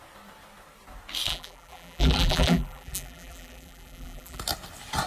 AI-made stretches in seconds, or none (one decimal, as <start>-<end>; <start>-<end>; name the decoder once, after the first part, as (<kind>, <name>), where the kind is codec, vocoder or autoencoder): 1.3-4.4 (vocoder, BigVGAN v2)